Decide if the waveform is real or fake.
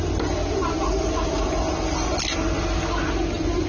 real